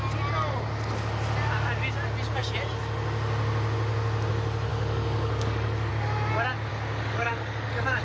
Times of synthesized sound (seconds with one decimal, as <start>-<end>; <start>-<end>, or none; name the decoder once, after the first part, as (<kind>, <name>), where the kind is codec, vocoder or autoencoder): 4.7-5.9 (codec, DAC); 6.7-8.0

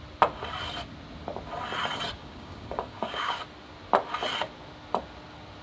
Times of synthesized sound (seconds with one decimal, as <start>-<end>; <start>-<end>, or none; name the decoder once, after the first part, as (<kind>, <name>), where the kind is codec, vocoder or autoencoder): 2.2-3.4 (codec, DAC)